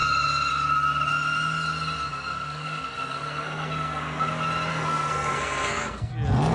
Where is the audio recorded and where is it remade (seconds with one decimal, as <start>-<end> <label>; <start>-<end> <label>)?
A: 0.0-2.1 recorded; 2.1-4.3 remade; 4.3-4.7 recorded; 4.7-6.1 remade; 6.1-6.5 recorded